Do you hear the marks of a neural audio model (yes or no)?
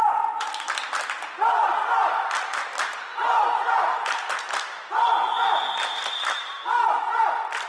no